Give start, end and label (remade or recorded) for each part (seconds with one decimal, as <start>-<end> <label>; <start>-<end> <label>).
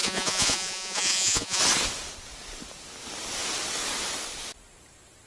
0.0-1.6 remade; 1.6-5.3 recorded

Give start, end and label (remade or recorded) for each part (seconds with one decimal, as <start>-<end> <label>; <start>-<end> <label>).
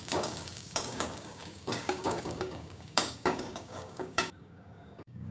0.0-5.3 remade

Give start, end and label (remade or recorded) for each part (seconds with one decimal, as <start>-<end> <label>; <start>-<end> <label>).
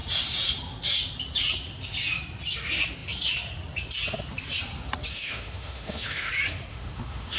0.0-5.1 recorded; 5.1-6.3 remade; 6.3-6.7 recorded; 6.7-7.4 remade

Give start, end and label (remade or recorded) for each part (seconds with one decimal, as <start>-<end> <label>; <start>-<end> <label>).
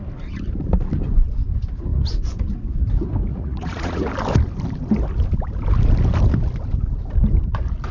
0.0-3.3 recorded; 3.3-4.1 remade; 4.1-7.9 recorded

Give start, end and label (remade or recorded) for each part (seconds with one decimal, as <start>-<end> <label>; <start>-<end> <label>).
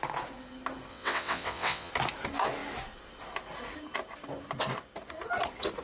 0.0-0.9 recorded; 0.9-1.9 remade; 1.9-5.8 recorded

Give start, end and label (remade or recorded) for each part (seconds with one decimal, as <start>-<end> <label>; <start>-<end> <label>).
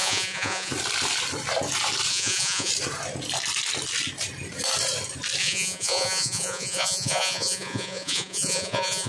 0.0-0.7 remade; 0.7-2.1 recorded; 2.1-2.7 remade; 2.7-5.4 recorded; 5.4-9.1 remade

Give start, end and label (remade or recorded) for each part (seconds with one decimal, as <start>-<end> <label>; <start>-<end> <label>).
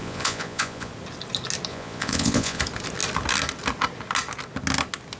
0.0-0.9 remade; 0.9-1.7 recorded; 1.7-2.6 remade; 2.6-5.2 recorded